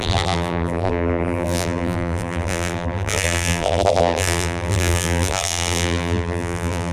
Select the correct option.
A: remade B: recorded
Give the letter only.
A